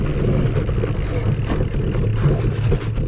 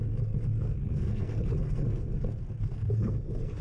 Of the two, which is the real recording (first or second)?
first